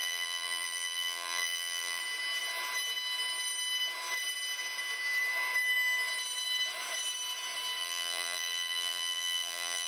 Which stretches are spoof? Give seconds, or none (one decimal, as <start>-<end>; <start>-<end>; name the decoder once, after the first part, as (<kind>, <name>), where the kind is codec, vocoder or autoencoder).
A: 0.0-2.0 (vocoder, BigVGAN v2); 7.8-9.9